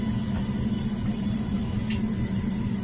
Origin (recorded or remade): recorded